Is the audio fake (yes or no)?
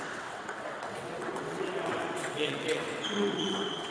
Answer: yes